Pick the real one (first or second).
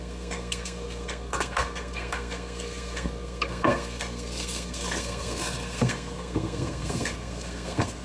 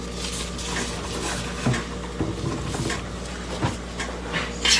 second